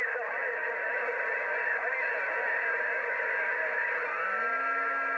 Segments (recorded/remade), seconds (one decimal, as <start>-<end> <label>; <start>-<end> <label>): 0.0-5.2 recorded